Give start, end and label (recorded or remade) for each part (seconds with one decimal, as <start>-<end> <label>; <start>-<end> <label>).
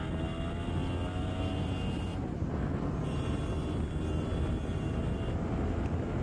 0.0-2.1 recorded; 2.1-3.4 remade; 3.4-6.2 recorded